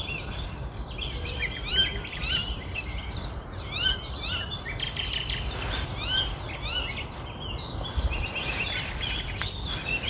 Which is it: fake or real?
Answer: fake